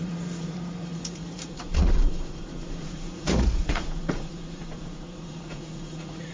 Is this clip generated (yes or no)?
yes